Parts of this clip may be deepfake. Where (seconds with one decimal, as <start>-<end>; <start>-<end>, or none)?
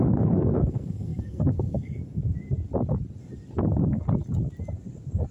0.0-2.0